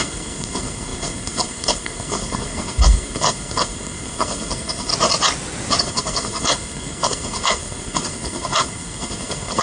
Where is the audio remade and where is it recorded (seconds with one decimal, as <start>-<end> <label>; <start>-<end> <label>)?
0.0-4.9 remade; 4.9-5.8 recorded; 5.8-9.6 remade